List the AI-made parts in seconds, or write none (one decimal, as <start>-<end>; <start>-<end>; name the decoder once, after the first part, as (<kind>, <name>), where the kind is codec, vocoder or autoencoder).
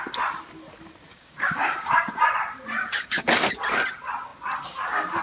1.1-2.1 (codec, DAC); 2.8-3.5